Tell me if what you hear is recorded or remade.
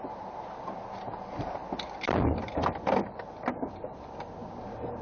recorded